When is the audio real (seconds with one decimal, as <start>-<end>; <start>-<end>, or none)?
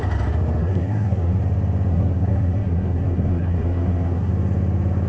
0.0-0.6; 1.4-1.9; 4.3-5.1